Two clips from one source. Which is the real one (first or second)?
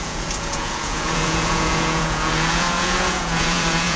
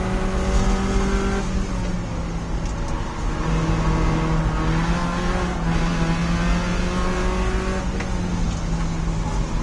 second